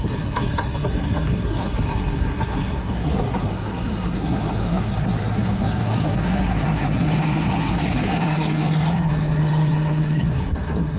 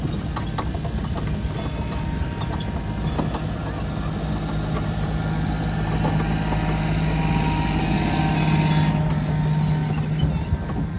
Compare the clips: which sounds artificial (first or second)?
first